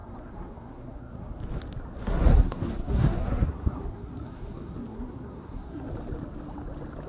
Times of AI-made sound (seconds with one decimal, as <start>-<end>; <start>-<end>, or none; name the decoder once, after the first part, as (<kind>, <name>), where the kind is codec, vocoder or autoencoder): 0.0-1.4 (codec, SNAC); 2.0-5.9